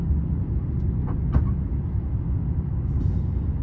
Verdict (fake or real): real